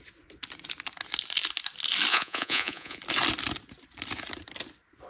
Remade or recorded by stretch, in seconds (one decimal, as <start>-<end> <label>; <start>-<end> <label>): 0.0-2.1 recorded; 2.1-3.0 remade; 3.0-5.1 recorded